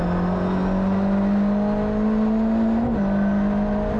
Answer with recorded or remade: recorded